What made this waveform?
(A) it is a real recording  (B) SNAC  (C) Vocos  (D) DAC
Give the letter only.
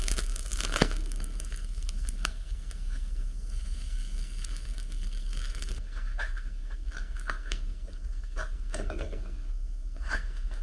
B